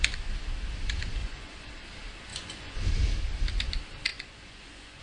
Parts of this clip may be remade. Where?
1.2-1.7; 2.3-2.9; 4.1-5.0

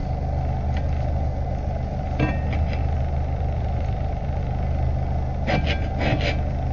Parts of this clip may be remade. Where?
2.8-4.4

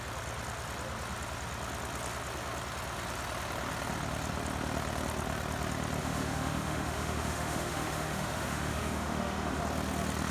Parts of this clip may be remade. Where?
6.0-9.6

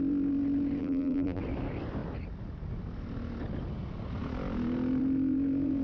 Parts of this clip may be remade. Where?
0.8-1.4

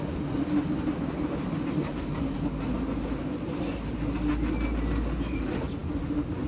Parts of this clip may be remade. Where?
none